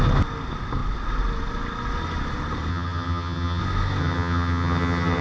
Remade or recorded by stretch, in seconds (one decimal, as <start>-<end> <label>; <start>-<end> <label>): 0.0-2.7 recorded; 2.7-3.6 remade; 3.6-4.0 recorded; 4.0-5.2 remade